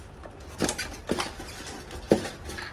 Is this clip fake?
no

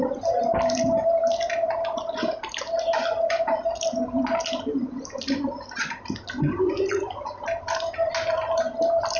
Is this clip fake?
no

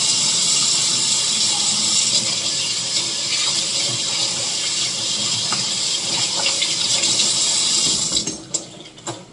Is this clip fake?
yes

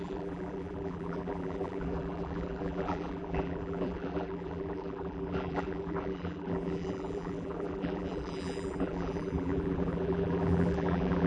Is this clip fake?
yes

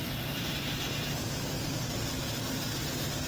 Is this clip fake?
no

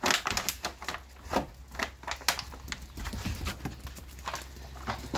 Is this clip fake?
no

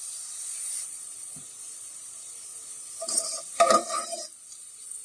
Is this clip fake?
yes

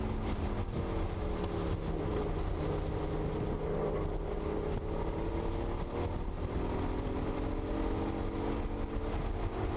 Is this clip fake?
no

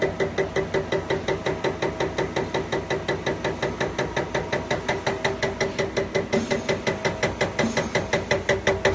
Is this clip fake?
no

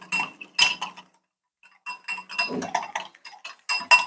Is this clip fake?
no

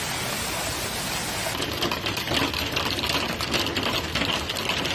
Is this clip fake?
no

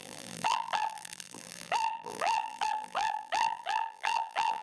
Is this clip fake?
yes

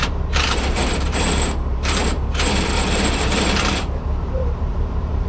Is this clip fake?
yes